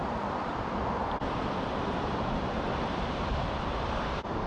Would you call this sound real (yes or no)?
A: no